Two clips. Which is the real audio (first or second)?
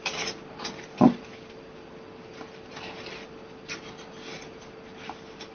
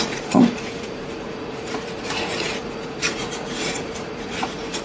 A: first